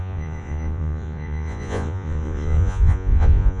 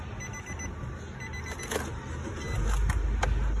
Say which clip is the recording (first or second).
second